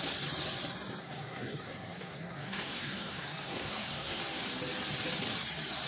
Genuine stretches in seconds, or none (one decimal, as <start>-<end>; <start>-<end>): 0.0-1.0; 4.2-5.9